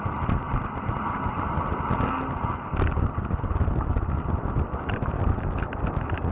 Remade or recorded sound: recorded